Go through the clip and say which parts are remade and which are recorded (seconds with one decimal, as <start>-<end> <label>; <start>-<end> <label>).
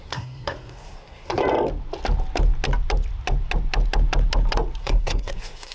0.0-1.4 remade; 1.4-4.8 recorded; 4.8-5.7 remade